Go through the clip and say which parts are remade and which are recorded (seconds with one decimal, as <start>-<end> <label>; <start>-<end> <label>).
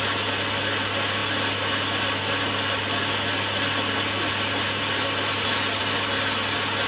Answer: 0.0-6.9 recorded